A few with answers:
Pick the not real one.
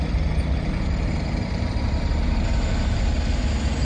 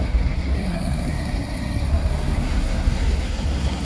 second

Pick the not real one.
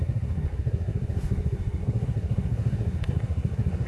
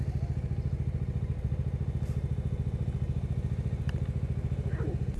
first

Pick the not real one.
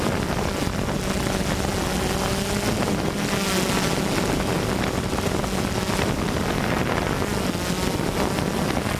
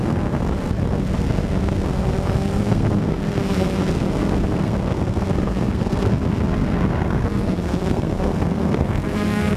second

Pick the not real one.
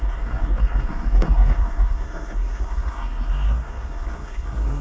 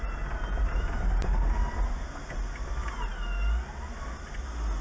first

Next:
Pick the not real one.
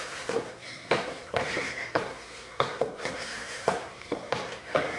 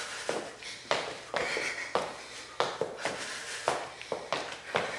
first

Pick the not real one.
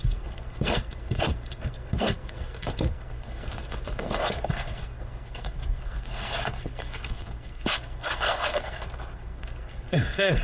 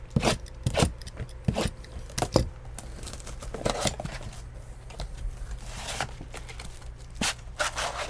first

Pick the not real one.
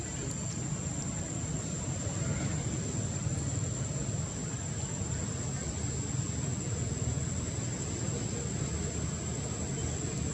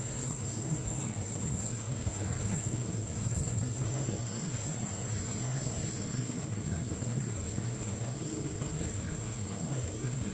second